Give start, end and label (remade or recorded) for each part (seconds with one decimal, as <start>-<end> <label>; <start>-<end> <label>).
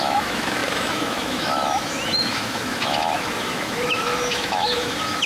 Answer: 0.0-5.3 remade